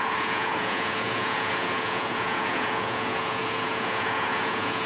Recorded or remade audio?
remade